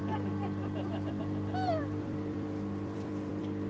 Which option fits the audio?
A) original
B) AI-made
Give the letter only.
B